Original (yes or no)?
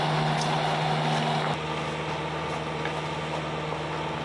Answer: yes